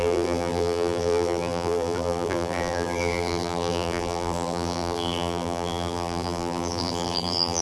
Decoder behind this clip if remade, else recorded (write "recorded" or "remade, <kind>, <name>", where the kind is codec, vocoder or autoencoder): remade, vocoder, BigVGAN v2